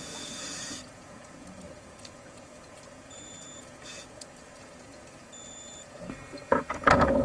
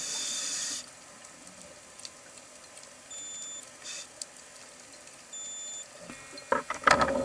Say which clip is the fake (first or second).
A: first